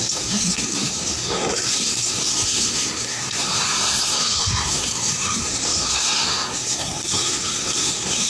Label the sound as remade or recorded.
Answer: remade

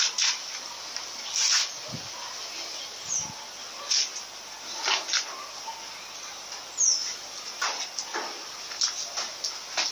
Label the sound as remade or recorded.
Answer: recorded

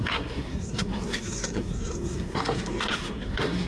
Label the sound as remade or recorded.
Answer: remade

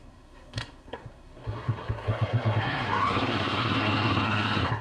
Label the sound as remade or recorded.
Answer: remade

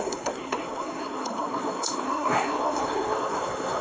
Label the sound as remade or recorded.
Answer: remade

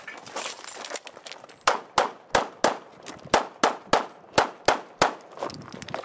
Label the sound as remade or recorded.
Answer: recorded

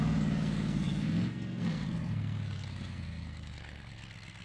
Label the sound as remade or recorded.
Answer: remade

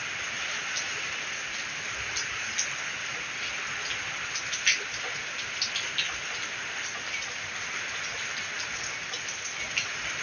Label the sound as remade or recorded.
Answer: recorded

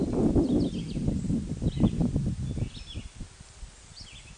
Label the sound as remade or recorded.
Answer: recorded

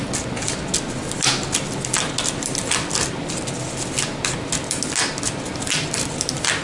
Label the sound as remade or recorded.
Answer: recorded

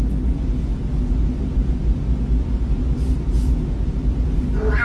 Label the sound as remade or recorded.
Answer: recorded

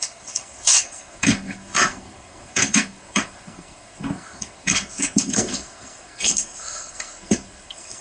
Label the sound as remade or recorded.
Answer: remade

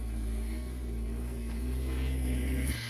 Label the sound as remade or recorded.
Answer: remade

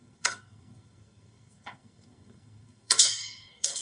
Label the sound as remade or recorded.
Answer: remade